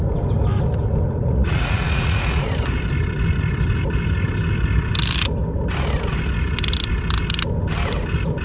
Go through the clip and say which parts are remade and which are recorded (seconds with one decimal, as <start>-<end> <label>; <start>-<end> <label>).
0.0-1.2 recorded; 1.2-2.5 remade; 2.5-8.4 recorded